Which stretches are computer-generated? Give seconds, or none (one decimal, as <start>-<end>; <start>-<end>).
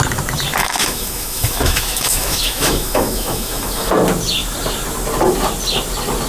0.6-3.9